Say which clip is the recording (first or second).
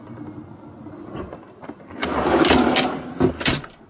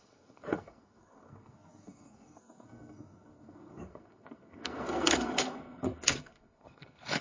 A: first